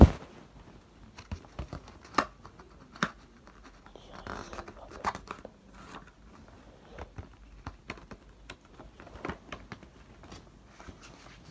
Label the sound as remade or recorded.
recorded